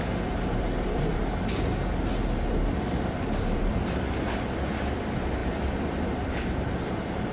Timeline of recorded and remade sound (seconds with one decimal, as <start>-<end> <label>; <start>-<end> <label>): 0.0-1.3 remade; 1.3-2.5 recorded; 2.5-7.3 remade